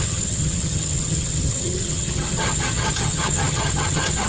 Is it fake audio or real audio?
fake